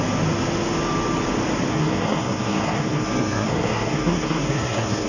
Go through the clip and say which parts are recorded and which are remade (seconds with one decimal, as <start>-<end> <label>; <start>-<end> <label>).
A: 0.0-1.7 recorded; 1.7-5.1 remade